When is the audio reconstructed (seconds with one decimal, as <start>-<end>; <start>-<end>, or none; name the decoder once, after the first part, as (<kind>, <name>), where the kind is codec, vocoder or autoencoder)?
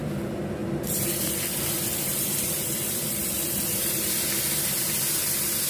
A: 0.6-4.0 (vocoder, BigVGAN v2)